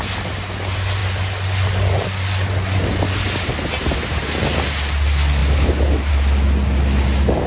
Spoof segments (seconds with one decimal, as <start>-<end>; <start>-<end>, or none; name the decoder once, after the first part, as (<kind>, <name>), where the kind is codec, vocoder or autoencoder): none